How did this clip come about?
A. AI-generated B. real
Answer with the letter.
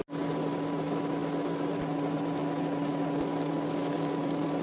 B